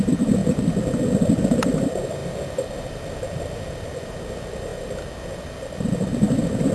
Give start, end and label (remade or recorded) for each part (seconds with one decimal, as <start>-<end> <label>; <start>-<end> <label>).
0.0-6.7 recorded